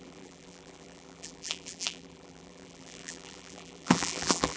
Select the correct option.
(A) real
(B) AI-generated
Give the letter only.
B